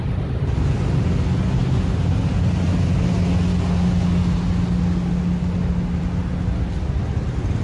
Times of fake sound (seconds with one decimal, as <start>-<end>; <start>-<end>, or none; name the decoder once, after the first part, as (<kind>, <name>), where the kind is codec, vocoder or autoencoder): none